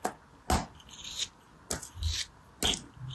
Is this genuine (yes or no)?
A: yes